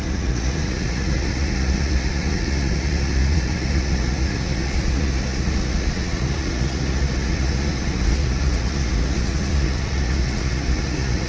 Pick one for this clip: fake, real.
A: fake